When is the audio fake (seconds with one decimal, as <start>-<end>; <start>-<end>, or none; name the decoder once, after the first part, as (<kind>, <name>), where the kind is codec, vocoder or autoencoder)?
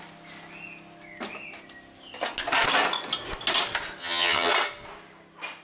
4.0-4.5 (vocoder, HiFi-GAN)